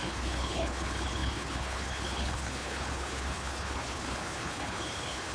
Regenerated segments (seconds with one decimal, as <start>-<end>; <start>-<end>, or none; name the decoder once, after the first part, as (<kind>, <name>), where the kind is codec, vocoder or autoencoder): 0.0-5.3 (codec, HILCodec)